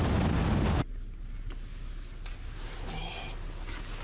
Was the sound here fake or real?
real